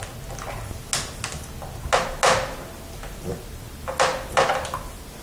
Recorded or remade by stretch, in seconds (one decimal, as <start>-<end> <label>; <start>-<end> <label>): 0.0-5.2 recorded